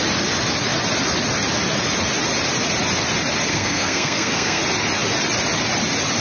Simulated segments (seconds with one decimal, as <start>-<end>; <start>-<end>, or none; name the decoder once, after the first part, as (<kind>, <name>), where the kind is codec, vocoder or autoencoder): 3.5-4.6 (codec, SNAC)